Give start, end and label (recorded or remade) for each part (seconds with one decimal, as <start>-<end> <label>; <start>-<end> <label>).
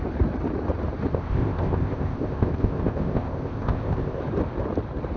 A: 0.0-1.1 recorded; 1.1-4.2 remade; 4.2-5.2 recorded